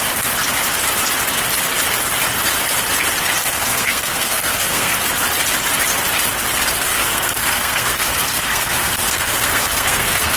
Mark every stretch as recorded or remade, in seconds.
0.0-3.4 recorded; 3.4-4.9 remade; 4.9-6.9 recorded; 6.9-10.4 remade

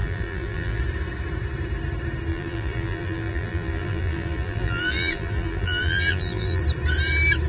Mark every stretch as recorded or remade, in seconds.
0.0-0.8 remade; 0.8-2.3 recorded; 2.3-6.6 remade; 6.6-7.5 recorded